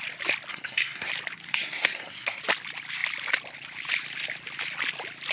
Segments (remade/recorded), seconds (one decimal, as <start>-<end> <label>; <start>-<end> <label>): 0.0-0.5 recorded; 0.5-1.1 remade; 1.1-1.5 recorded; 1.5-2.4 remade; 2.4-5.3 recorded